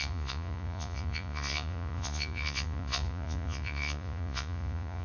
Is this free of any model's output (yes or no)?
no